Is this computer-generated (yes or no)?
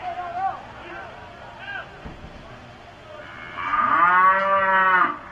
no